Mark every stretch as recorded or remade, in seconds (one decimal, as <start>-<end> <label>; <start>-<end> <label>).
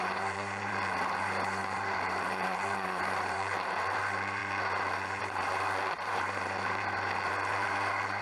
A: 0.0-4.4 remade; 4.4-5.2 recorded; 5.2-8.2 remade